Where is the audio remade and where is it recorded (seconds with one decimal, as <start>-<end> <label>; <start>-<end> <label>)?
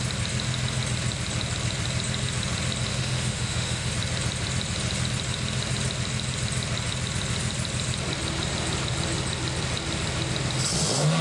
0.0-2.9 recorded; 2.9-3.9 remade; 3.9-11.2 recorded